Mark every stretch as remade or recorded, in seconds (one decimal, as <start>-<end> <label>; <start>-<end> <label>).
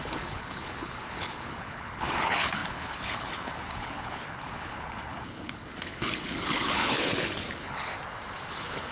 0.0-7.9 remade; 7.9-8.5 recorded; 8.5-8.9 remade